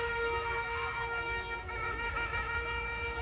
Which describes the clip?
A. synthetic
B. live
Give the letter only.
A